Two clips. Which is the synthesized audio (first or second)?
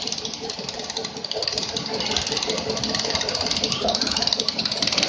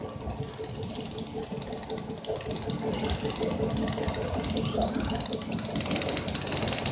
first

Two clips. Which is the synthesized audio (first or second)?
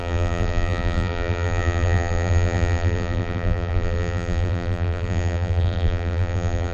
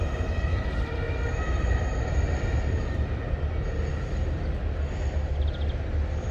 first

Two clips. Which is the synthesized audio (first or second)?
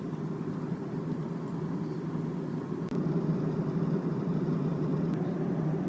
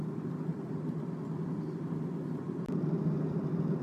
first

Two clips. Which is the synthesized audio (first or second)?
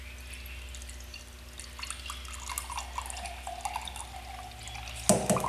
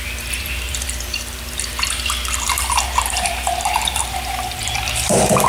second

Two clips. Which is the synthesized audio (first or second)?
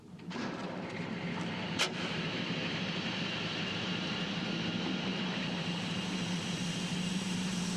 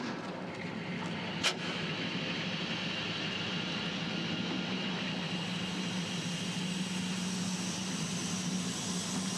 first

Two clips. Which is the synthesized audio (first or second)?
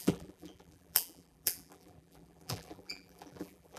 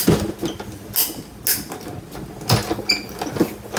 first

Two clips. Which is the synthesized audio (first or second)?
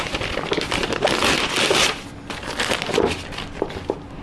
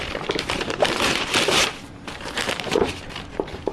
second